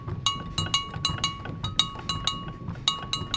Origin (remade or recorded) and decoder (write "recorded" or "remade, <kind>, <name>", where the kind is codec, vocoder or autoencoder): recorded